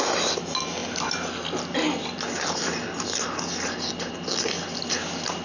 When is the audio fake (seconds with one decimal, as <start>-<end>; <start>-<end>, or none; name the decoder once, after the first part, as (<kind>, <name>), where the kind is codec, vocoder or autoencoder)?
none